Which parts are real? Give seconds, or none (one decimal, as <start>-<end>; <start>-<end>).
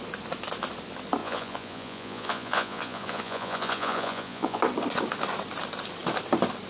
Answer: 0.0-1.2; 4.6-6.7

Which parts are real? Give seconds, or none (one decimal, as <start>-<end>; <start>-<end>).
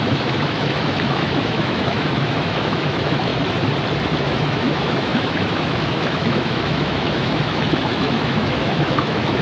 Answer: 3.3-4.2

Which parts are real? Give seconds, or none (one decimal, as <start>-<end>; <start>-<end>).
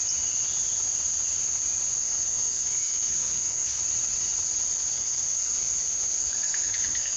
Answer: 0.0-2.0; 3.8-4.9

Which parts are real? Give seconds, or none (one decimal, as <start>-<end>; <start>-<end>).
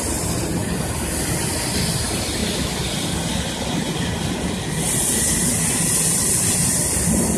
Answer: 2.4-6.1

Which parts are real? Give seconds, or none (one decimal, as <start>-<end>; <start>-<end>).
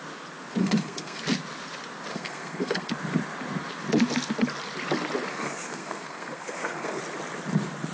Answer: 0.0-0.6; 1.2-2.1; 2.9-5.3; 7.0-7.9